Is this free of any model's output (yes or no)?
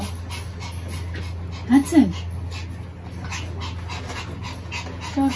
yes